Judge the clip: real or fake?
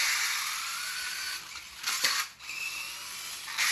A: real